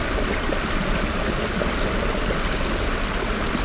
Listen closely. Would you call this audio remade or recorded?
recorded